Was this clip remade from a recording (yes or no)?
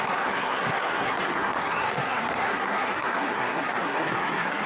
yes